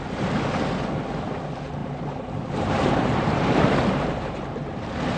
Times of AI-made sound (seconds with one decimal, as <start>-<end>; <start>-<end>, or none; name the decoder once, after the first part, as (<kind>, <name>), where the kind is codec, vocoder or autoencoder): 1.8-4.7 (vocoder, BigVGAN v2)